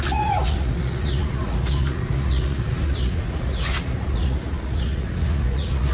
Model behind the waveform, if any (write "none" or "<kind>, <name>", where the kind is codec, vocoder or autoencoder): vocoder, Vocos